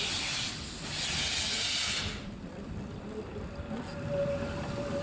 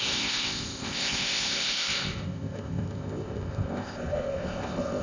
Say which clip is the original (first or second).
first